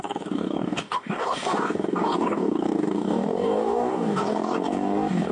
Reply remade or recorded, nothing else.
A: remade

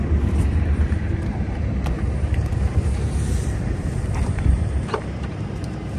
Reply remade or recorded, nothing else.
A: remade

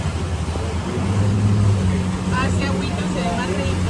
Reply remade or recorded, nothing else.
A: recorded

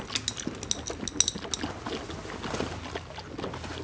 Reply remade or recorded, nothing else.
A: recorded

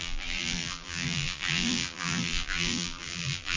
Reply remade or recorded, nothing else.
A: remade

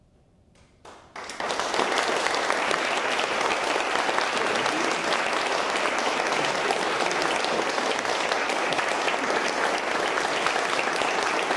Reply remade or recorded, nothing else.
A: recorded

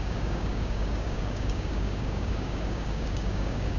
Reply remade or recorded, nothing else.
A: remade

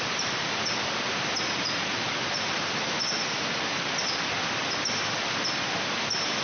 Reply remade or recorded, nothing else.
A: recorded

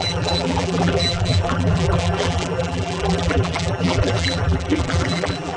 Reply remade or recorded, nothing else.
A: remade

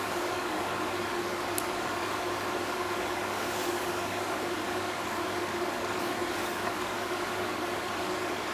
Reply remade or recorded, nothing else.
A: remade